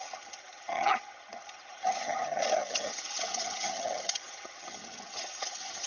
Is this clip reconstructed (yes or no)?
yes